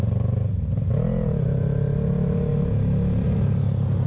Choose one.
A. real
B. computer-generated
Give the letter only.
A